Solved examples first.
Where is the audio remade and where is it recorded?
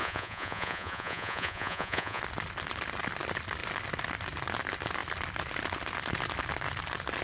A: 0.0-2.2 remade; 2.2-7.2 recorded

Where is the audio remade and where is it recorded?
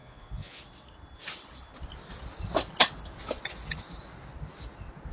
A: 0.0-0.6 remade; 0.6-5.1 recorded